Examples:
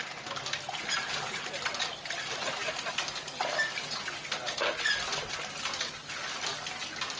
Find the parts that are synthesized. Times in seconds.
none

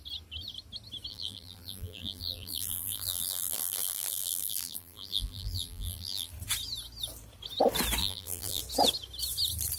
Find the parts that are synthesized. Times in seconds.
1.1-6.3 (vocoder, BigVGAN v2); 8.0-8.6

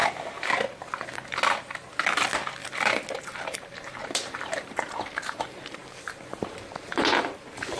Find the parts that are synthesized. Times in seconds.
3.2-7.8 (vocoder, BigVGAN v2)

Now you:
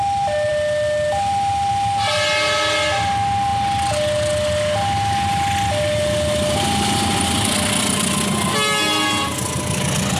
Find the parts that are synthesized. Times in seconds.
none

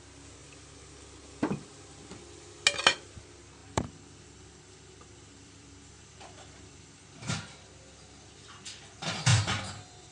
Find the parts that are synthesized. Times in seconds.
3.6-7.0 (vocoder, BigVGAN v2); 9.3-10.1